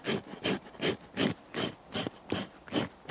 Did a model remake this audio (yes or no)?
no